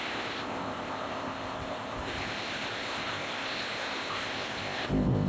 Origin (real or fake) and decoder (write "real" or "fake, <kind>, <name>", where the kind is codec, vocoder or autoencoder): fake, codec, ZipCodec